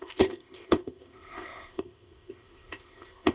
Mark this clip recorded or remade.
remade